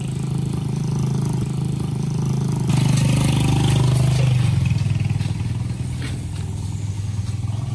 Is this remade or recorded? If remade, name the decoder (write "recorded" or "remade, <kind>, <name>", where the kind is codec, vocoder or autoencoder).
recorded